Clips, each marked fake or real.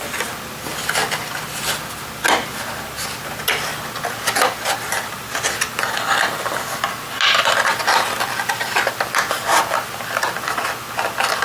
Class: real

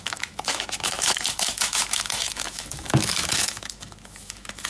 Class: fake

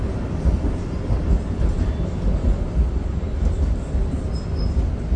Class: real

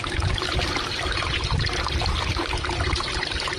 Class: fake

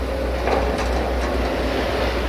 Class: real